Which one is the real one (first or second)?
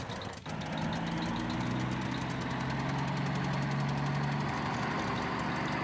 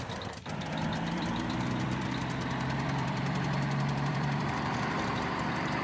first